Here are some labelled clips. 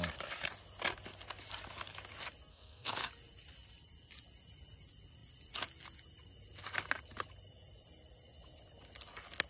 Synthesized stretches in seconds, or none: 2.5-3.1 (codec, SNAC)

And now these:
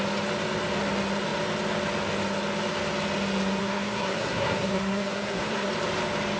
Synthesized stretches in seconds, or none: 3.6-5.7 (codec, SNAC)

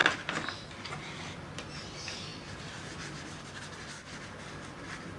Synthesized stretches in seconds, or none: none

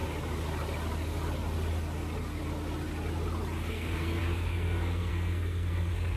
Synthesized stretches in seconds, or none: 3.7-6.2 (codec, SNAC)